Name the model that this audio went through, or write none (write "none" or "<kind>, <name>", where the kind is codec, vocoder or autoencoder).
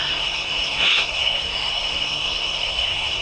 codec, SNAC